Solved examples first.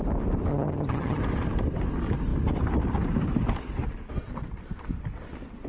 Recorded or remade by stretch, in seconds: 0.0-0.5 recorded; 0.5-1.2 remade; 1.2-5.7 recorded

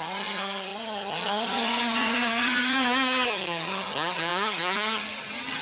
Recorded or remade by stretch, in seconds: 0.0-5.6 remade

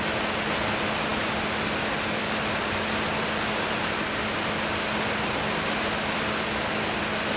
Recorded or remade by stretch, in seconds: 0.0-7.4 recorded